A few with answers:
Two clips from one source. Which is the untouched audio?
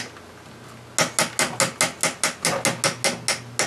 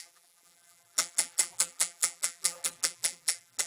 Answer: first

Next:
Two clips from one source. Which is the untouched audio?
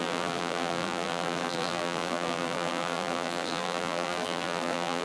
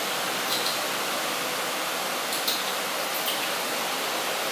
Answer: second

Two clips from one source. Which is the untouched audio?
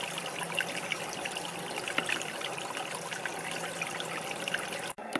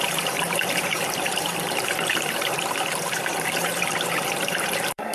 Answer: first